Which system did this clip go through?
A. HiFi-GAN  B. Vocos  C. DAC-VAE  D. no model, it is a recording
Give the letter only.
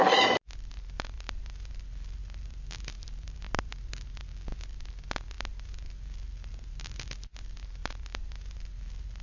D